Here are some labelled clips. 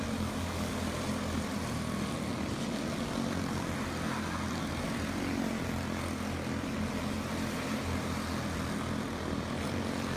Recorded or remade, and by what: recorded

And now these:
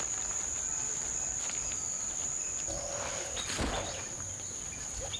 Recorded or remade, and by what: remade, vocoder, BigVGAN v2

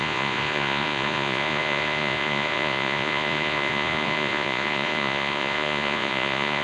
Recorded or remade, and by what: remade, vocoder, Vocos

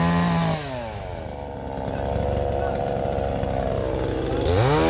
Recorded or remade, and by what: recorded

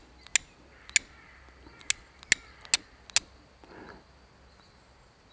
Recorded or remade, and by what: recorded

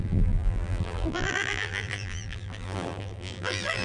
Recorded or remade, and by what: remade, vocoder, BigVGAN v2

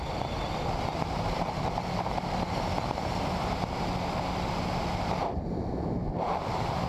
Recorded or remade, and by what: recorded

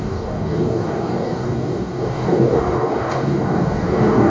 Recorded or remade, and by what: remade, codec, DAC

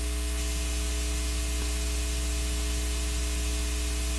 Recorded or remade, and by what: recorded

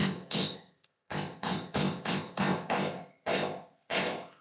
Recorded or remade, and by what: remade, codec, ZipCodec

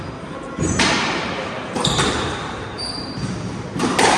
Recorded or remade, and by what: remade, vocoder, BigVGAN v2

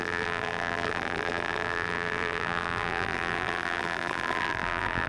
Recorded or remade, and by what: remade, vocoder, BigVGAN v2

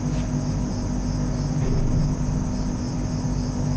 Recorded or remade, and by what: recorded